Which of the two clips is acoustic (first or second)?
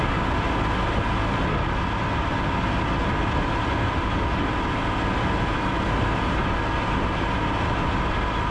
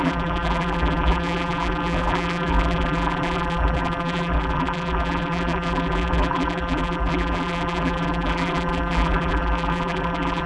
first